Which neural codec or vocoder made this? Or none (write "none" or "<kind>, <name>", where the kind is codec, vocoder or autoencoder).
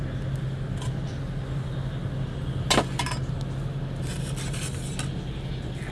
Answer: none